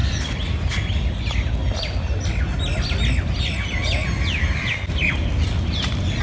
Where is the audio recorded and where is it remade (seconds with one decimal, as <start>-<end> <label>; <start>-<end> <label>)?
0.0-6.2 recorded

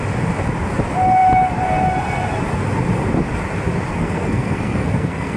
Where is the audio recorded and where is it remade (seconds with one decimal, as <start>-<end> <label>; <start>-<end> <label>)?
0.0-3.9 recorded; 3.9-5.4 remade

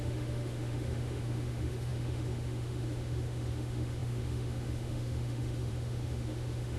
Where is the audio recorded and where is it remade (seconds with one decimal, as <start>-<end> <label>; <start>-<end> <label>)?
0.0-6.8 remade

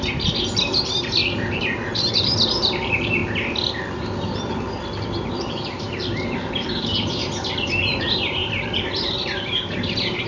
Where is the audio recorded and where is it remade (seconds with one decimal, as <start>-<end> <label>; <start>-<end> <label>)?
0.0-3.2 remade; 3.2-5.3 recorded; 5.3-10.3 remade

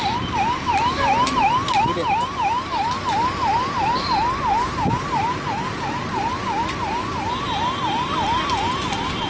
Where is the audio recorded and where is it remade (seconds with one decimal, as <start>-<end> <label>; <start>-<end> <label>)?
0.0-9.3 recorded

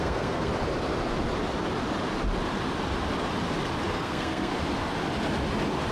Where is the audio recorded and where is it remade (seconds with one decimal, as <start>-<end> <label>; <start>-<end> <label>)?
0.0-0.5 remade; 0.5-3.9 recorded; 3.9-4.5 remade; 4.5-5.9 recorded

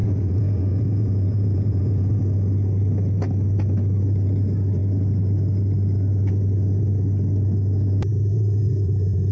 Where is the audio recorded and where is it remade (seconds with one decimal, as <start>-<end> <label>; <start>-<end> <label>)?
0.0-2.2 remade; 2.2-8.1 recorded; 8.1-9.3 remade